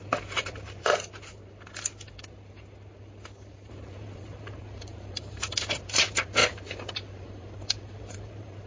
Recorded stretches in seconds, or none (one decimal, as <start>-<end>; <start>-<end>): 0.9-3.7